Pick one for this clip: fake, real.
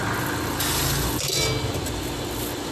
real